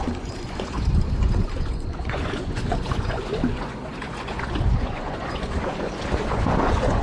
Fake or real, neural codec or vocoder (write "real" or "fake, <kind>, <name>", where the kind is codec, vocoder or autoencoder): fake, vocoder, Vocos